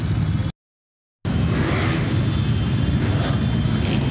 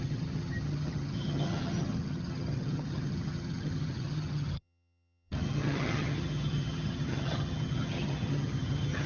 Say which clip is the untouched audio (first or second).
first